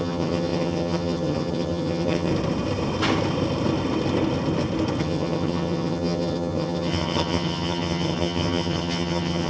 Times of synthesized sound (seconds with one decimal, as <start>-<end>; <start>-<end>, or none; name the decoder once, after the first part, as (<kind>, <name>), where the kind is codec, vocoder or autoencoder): 0.0-2.3 (vocoder, HiFi-GAN); 5.0-9.5